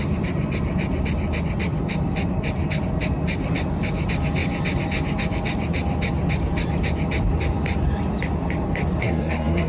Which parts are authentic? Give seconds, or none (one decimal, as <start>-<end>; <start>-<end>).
0.0-9.0